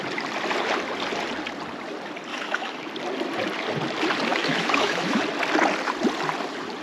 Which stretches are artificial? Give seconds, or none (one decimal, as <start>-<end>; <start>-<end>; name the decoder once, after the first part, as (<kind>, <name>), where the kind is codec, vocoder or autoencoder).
2.3-2.9 (autoencoder, DAC-VAE); 4.3-5.2